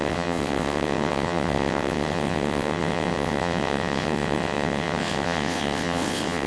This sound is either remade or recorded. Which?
remade